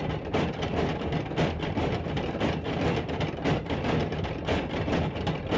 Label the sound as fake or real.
fake